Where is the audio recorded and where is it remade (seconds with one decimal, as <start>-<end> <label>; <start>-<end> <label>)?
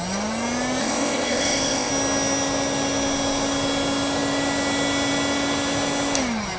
0.0-0.8 recorded; 0.8-1.9 remade; 1.9-6.6 recorded